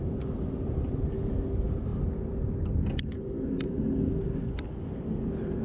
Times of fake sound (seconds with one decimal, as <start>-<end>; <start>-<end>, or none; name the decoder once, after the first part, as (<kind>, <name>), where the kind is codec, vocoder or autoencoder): none